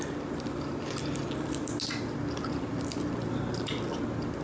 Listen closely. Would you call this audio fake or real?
real